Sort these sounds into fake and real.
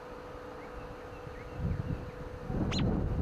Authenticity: real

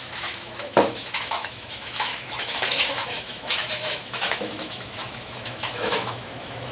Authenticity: fake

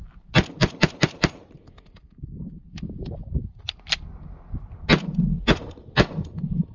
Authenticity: real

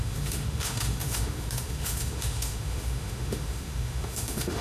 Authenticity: fake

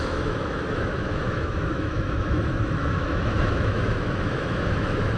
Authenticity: fake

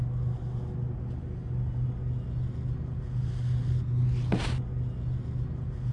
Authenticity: real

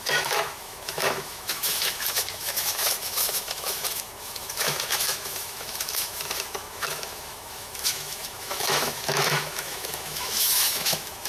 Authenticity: fake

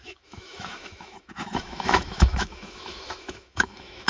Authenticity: fake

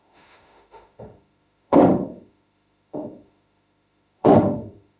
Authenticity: fake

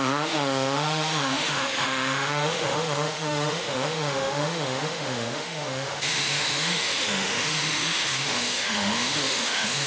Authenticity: fake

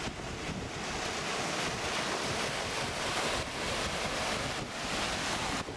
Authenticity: real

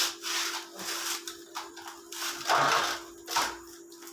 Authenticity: real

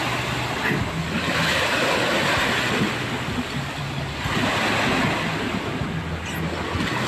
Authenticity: real